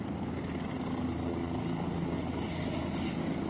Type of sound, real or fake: real